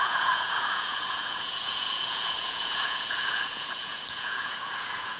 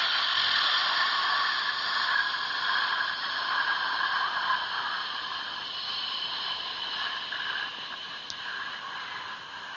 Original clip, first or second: second